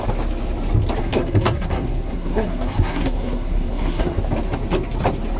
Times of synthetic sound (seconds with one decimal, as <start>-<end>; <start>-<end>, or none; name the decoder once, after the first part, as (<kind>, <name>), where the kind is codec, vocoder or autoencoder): 1.0-4.2 (codec, SNAC)